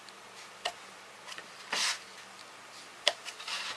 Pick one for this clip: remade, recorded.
recorded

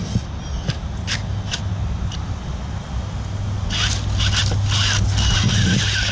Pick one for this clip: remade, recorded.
recorded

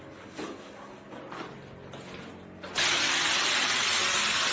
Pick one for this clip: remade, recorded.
recorded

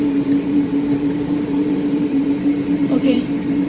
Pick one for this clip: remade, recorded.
remade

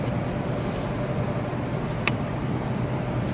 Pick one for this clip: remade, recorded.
recorded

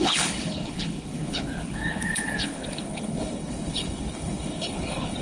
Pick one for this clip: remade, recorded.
remade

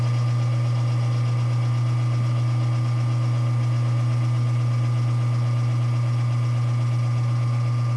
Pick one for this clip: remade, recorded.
recorded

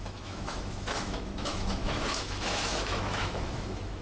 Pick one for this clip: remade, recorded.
remade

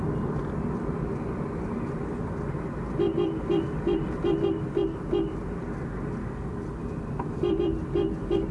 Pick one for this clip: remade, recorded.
recorded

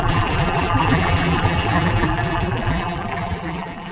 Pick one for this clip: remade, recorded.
remade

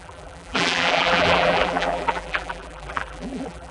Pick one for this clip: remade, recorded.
remade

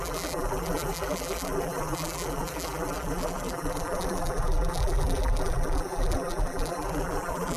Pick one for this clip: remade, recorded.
remade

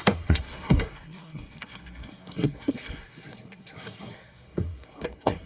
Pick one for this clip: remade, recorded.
remade